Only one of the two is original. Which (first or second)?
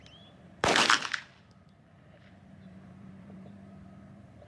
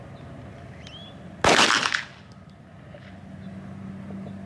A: second